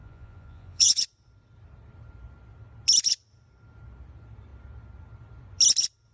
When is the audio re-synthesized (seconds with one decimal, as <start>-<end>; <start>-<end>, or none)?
0.0-1.0